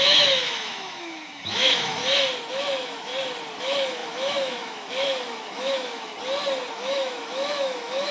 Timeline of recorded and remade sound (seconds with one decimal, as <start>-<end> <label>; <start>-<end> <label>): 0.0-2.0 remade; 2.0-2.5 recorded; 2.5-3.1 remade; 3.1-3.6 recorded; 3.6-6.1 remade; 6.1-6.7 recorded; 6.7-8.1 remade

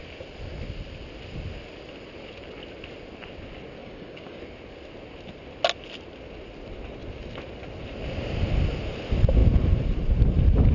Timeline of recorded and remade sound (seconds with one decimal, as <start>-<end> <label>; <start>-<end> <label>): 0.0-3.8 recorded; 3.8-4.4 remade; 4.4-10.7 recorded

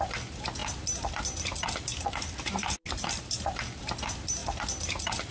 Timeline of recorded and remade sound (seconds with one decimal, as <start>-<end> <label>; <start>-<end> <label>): 0.0-5.3 recorded

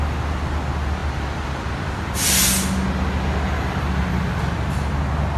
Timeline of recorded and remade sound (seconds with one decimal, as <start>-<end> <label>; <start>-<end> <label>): 0.0-5.4 recorded

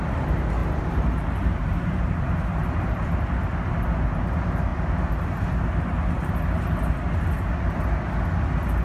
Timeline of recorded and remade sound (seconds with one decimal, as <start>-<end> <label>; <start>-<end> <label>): 0.0-0.6 recorded; 0.6-2.3 remade; 2.3-4.7 recorded; 4.7-6.3 remade; 6.3-8.8 recorded

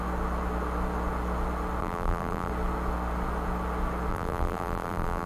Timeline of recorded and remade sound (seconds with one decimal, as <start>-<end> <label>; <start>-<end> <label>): 0.0-1.8 recorded; 1.8-2.5 remade; 2.5-4.1 recorded; 4.1-5.3 remade

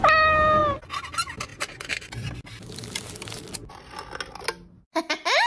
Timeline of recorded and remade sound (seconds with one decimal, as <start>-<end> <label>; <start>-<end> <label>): 0.0-5.5 recorded